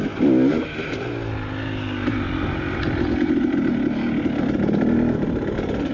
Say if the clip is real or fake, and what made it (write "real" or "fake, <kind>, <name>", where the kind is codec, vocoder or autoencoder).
real